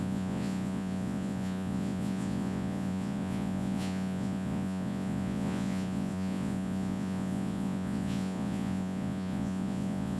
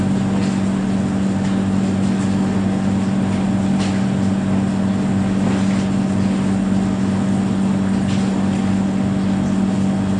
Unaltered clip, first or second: second